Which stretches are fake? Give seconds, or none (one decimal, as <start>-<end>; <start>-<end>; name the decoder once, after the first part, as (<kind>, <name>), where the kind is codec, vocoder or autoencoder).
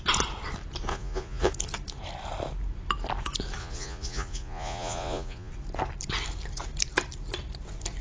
0.9-1.5 (vocoder, Vocos); 3.6-5.5